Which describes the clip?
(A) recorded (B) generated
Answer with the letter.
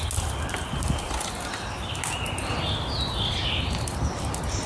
A